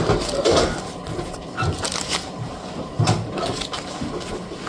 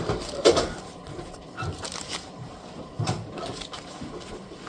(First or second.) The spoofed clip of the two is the second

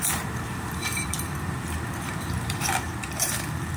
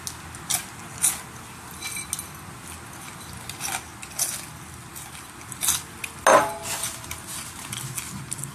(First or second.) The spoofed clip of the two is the first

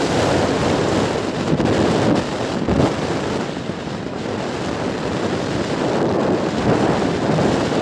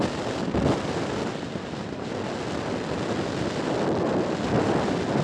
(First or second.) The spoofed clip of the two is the first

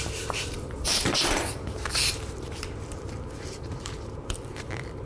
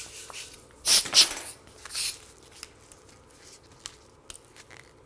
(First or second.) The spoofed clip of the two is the first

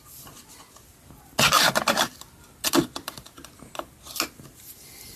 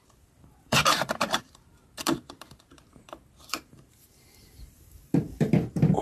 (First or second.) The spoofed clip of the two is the second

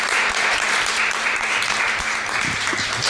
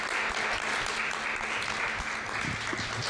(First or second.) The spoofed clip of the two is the first